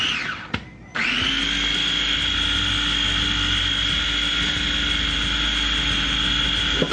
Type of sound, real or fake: real